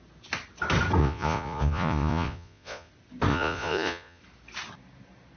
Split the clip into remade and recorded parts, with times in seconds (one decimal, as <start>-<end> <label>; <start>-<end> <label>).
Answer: 0.0-1.0 recorded; 1.0-2.9 remade; 2.9-3.3 recorded; 3.3-4.2 remade; 4.2-5.4 recorded